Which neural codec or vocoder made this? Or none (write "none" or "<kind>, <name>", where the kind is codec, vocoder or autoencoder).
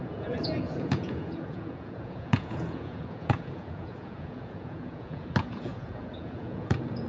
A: vocoder, Vocos